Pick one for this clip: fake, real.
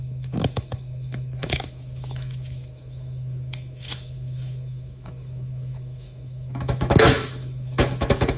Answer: fake